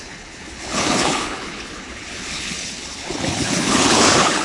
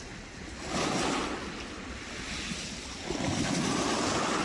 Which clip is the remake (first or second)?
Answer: first